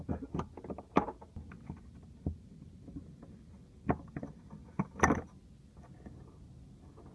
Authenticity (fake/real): real